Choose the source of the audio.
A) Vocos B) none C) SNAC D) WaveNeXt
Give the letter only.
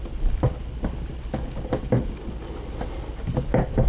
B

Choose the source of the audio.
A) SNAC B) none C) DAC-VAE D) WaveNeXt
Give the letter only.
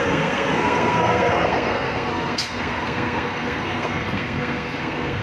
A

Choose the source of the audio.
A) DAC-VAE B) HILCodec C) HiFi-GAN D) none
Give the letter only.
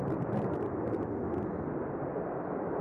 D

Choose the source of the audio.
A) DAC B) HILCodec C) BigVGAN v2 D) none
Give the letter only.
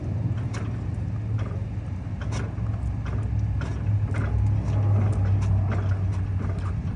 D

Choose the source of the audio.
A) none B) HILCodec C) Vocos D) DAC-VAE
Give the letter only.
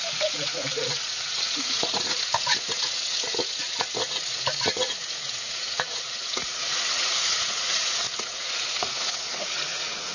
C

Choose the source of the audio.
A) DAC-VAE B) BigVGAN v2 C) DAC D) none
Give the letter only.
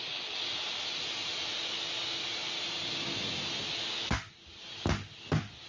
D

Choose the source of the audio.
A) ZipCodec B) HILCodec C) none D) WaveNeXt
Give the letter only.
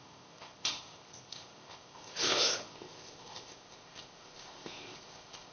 A